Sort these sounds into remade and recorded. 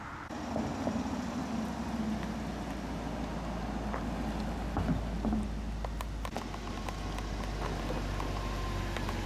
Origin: recorded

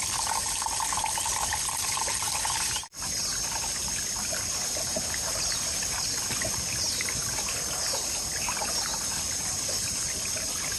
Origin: recorded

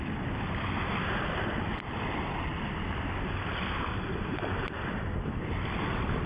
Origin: remade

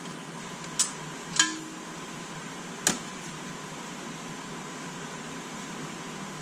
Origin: recorded